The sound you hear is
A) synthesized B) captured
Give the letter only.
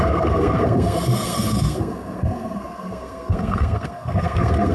A